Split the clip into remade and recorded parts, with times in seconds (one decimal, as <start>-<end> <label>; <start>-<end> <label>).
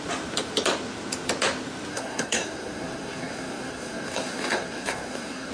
0.0-1.9 recorded; 1.9-5.5 remade